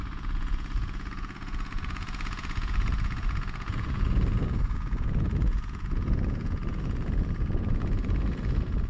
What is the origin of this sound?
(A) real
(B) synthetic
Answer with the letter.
B